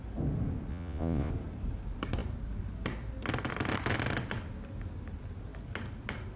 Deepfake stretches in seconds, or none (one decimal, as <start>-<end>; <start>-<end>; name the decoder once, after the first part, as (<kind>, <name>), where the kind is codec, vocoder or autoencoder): 0.7-1.3 (vocoder, Vocos)